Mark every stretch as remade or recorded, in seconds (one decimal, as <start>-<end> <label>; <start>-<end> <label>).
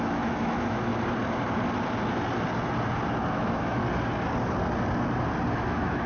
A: 0.0-0.9 remade; 0.9-3.3 recorded; 3.3-3.8 remade; 3.8-5.5 recorded; 5.5-6.1 remade